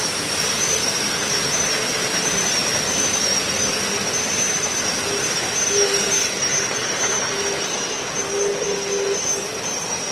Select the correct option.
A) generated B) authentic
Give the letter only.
B